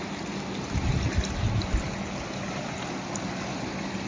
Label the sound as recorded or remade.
remade